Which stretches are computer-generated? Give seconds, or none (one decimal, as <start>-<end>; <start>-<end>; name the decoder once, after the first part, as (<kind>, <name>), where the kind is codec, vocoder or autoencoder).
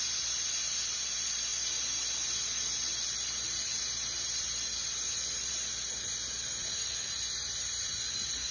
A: none